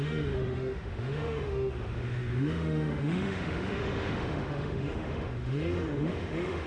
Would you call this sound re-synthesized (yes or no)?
yes